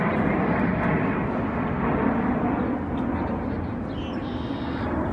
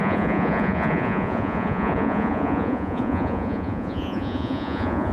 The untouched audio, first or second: first